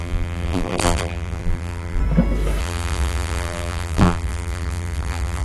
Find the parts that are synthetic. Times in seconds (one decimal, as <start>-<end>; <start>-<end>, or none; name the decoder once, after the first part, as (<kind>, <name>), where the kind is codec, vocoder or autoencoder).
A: 0.0-2.0 (vocoder, BigVGAN v2); 2.6-5.4